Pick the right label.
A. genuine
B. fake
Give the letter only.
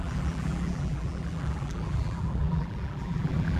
B